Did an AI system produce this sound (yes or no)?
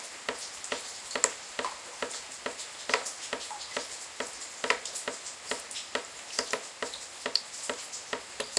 no